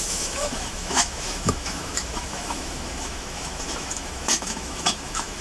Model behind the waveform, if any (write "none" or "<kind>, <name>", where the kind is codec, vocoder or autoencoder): autoencoder, DAC-VAE